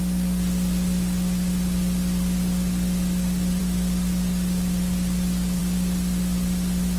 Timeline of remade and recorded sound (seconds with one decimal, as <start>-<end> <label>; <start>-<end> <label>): 0.0-7.0 recorded